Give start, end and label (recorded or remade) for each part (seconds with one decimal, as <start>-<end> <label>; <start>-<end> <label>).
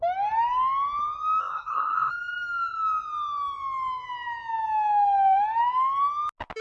0.0-1.4 recorded; 1.4-2.1 remade; 2.1-6.6 recorded